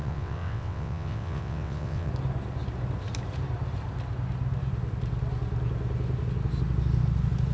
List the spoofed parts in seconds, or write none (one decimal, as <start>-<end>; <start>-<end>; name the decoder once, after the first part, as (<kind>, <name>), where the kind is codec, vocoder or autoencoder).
0.0-2.1 (vocoder, WaveNeXt)